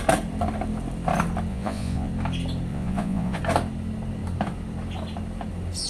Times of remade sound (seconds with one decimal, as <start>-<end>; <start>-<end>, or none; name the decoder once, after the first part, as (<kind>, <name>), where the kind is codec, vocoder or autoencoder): 1.5-2.1 (vocoder, Vocos); 2.7-3.4